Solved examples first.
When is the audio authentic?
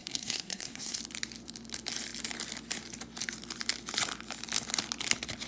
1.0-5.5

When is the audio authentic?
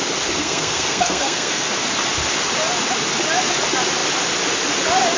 0.0-0.4; 1.7-5.2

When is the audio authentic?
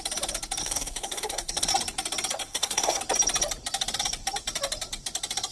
0.0-0.6; 1.7-2.4; 3.0-5.5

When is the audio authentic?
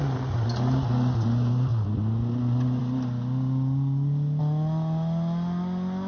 0.0-6.1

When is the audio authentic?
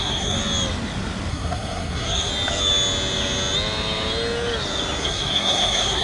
0.4-1.3; 2.3-5.0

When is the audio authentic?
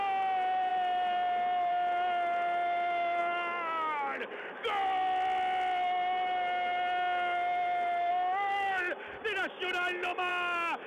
0.0-10.9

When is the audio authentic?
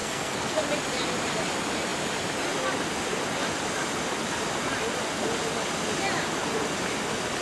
0.6-7.4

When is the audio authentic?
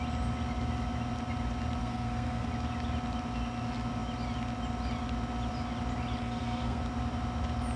0.0-1.8; 2.5-6.2; 6.8-7.8